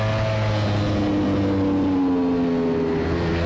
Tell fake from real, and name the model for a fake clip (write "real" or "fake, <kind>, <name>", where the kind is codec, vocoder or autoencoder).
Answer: real